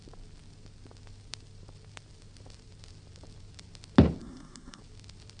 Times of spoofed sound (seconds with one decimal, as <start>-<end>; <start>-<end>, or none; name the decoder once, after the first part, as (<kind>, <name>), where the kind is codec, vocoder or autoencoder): 4.2-4.8 (codec, SNAC)